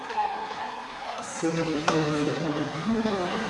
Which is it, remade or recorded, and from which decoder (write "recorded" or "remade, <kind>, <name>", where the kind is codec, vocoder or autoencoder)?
remade, codec, SNAC